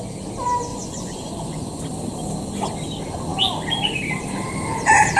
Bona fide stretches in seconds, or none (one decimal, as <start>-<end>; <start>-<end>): 0.0-0.7; 1.7-5.2

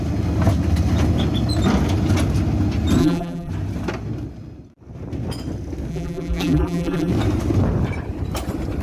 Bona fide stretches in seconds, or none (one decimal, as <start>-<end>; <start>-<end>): 0.0-3.0; 3.5-5.9; 7.1-8.8

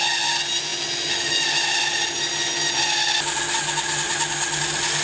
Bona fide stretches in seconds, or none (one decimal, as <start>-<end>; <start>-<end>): 0.0-5.0

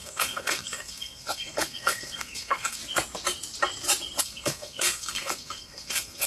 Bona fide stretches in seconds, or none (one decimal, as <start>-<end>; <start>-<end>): 2.8-4.2

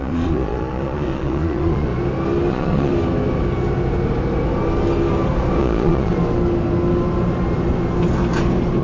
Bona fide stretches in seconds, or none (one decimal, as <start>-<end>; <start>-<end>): 1.9-2.5; 2.9-5.6; 6.1-8.8

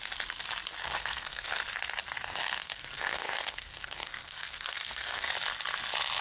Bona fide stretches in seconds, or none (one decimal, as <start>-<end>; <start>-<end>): 0.0-0.8; 1.6-2.3; 5.3-6.2

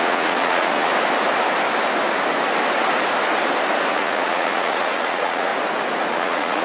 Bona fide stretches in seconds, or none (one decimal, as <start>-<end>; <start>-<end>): 0.9-3.9; 5.5-6.1

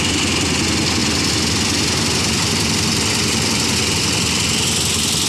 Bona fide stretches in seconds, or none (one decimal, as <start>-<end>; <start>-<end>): 0.0-1.0; 4.0-5.3